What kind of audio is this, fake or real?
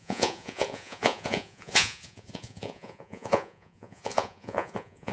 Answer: fake